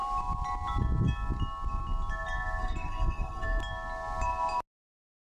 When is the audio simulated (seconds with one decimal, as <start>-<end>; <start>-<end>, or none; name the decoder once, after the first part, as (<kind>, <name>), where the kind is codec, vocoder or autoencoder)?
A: 2.6-3.6 (codec, SNAC)